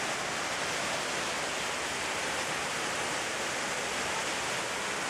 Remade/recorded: recorded